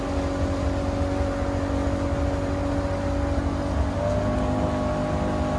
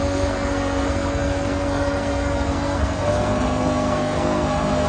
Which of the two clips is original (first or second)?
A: first